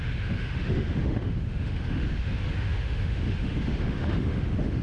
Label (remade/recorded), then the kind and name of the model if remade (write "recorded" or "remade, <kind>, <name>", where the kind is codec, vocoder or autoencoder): remade, autoencoder, DAC-VAE